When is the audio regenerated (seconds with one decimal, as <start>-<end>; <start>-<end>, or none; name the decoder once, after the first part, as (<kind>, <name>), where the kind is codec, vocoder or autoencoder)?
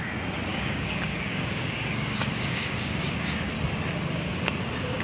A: 0.5-3.5 (codec, DAC)